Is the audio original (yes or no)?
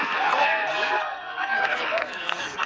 no